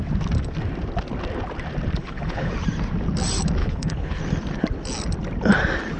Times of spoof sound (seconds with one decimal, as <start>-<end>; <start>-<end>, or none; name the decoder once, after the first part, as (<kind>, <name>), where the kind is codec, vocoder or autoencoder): 2.0-2.5 (codec, HILCodec); 3.6-4.2